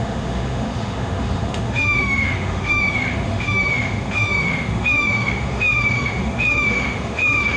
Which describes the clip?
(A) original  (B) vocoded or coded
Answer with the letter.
B